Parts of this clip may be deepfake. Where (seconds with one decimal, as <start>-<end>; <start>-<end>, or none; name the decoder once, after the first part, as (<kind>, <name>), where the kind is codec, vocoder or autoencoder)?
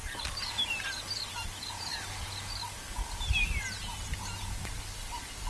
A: none